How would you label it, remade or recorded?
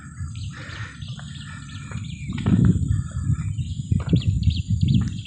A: recorded